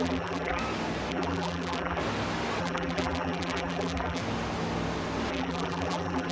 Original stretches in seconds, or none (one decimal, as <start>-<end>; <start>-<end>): 0.6-1.1; 2.0-2.6; 4.2-5.3